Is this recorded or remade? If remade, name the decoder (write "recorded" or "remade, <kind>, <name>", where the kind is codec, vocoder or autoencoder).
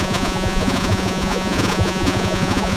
remade, vocoder, Vocos